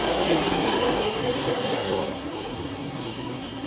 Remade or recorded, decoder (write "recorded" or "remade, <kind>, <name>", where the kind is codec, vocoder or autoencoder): remade, codec, SNAC